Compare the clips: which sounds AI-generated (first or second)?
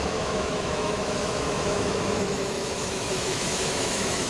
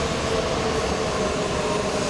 first